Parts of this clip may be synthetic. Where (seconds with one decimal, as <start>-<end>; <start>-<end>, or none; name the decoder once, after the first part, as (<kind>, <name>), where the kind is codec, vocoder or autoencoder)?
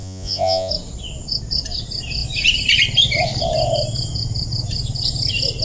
0.0-0.7 (vocoder, Vocos)